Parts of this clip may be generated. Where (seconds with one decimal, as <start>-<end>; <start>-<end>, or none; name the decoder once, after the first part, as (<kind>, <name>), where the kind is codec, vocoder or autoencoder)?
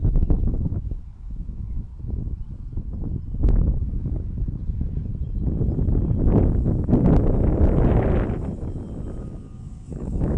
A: 0.0-1.9 (codec, DAC); 3.8-5.1; 9.2-10.4